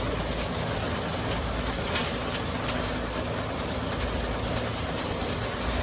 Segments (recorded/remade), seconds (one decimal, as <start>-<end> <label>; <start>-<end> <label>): 0.0-5.8 recorded